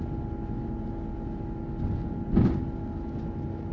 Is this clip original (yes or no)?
yes